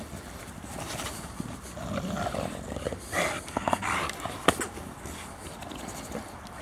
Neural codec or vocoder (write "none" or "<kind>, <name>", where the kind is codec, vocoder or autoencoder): none